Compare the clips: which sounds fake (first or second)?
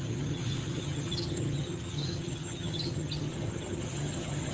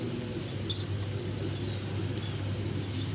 first